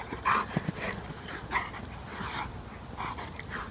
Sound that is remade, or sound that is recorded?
recorded